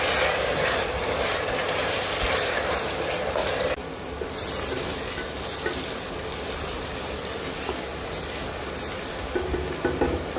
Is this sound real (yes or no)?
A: yes